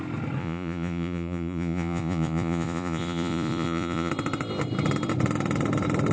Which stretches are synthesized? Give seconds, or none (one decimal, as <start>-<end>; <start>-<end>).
0.4-4.1